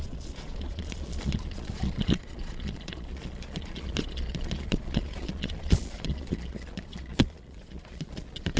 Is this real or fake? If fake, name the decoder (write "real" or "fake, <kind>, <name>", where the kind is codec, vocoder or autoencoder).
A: fake, vocoder, Vocos